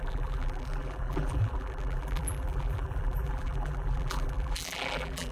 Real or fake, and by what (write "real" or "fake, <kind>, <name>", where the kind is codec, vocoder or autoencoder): fake, vocoder, BigVGAN v2